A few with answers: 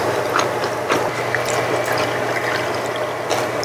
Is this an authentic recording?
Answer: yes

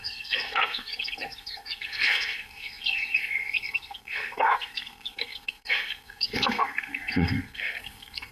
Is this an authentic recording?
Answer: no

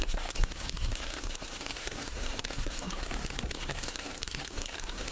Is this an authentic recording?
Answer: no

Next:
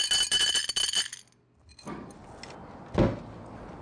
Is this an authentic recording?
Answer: yes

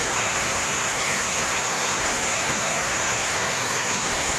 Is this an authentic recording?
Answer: no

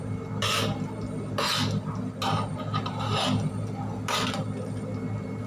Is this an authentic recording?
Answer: yes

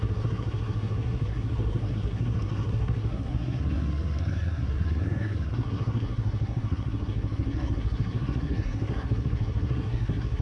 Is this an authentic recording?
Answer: no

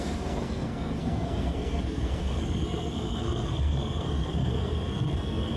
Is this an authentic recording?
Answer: no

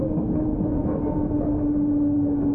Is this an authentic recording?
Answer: yes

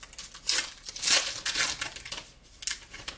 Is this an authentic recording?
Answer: yes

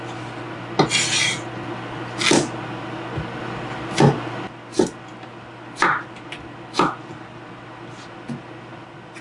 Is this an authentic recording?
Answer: yes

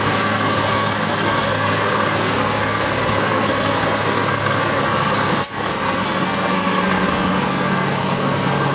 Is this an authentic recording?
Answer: no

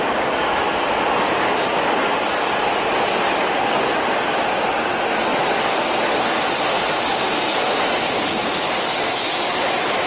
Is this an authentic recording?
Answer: yes